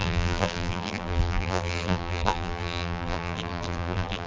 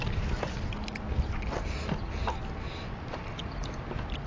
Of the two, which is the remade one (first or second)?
first